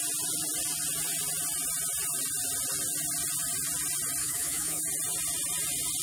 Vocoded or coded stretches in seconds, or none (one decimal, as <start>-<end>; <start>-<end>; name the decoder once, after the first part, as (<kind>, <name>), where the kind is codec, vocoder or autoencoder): 4.2-4.8 (autoencoder, DAC-VAE)